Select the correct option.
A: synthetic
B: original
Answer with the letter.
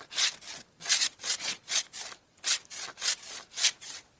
B